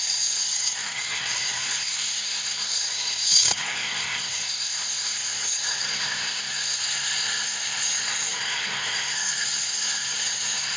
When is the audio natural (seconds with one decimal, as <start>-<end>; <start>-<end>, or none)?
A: none